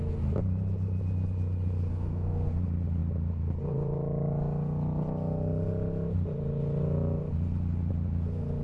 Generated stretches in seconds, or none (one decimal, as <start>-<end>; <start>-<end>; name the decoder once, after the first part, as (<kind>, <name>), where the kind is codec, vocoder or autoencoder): 1.9-2.6 (codec, SNAC)